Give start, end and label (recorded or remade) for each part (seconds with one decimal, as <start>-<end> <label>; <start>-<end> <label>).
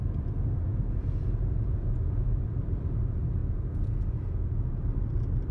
0.0-0.7 recorded; 0.7-2.3 remade; 2.3-3.4 recorded; 3.4-4.8 remade; 4.8-5.5 recorded